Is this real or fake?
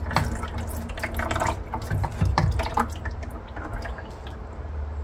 real